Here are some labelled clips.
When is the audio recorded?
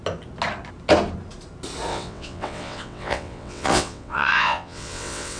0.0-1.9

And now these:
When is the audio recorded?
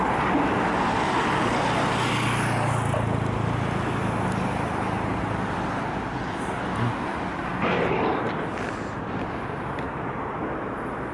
0.0-11.1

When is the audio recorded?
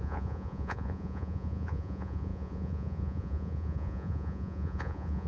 none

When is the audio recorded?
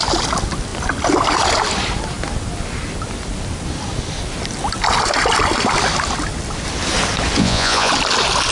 0.0-7.4; 7.9-8.5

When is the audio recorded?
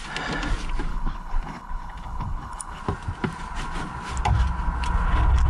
0.0-0.9; 2.8-5.5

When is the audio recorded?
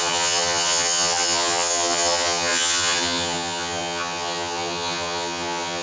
none